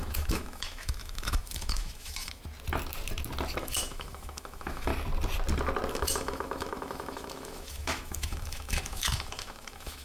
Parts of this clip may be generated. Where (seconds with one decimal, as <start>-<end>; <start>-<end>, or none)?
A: 0.0-2.4; 3.6-4.9; 5.9-10.0